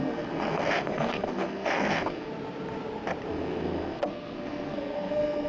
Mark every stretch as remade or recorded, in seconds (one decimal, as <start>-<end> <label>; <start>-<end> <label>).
0.0-2.3 remade; 2.3-3.3 recorded; 3.3-5.5 remade

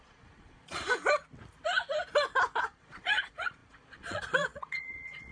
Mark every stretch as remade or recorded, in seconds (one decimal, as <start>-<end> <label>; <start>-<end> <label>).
0.0-1.0 remade; 1.0-2.6 recorded; 2.6-5.3 remade

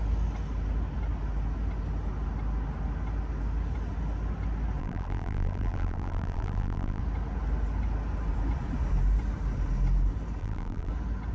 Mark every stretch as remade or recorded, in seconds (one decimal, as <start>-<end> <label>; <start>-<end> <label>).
0.0-4.8 recorded; 4.8-7.0 remade; 7.0-10.4 recorded; 10.4-10.9 remade; 10.9-11.3 recorded